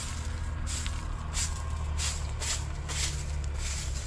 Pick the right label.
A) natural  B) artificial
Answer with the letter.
A